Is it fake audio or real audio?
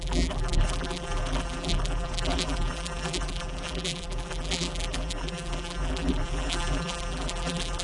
fake